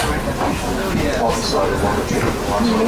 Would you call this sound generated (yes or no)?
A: no